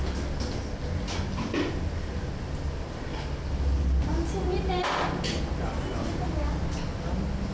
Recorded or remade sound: recorded